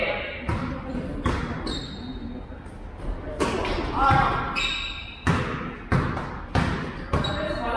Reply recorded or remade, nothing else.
recorded